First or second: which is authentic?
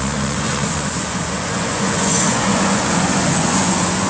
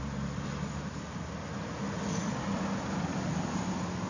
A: second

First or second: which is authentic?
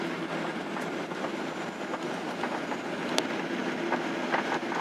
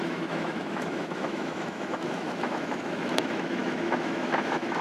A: first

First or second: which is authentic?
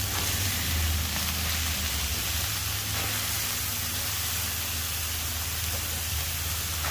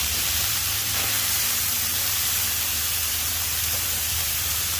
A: first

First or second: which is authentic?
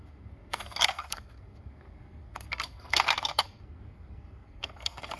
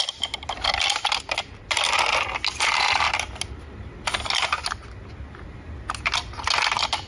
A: second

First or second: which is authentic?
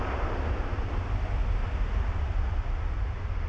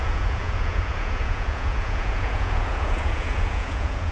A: first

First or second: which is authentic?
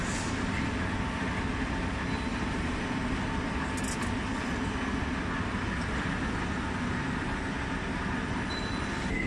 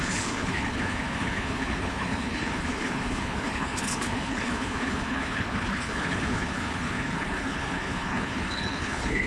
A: first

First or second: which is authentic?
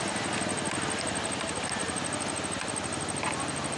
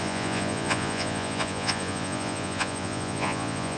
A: first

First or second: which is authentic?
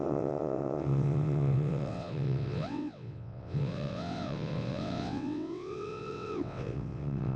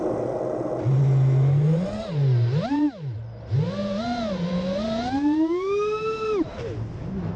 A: second